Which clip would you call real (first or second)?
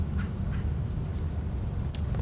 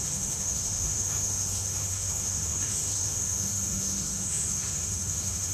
first